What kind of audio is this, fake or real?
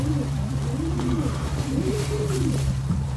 fake